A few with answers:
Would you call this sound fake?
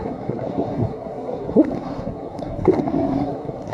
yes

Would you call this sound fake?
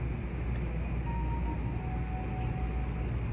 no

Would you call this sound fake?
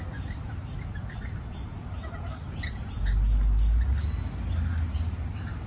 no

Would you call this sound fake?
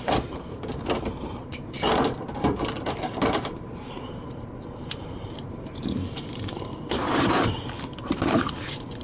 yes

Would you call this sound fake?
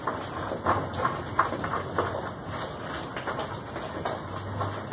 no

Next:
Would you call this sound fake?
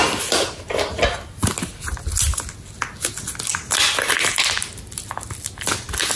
no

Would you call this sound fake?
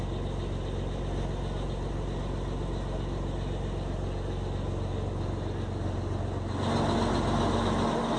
no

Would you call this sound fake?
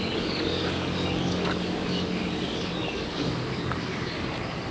yes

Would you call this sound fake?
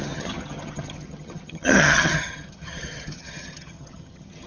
yes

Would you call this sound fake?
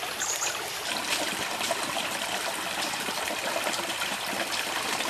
yes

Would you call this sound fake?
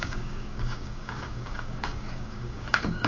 yes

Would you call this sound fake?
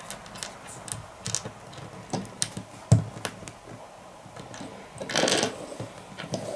no